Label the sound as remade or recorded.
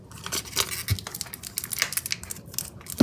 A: recorded